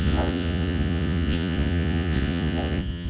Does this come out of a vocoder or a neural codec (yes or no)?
yes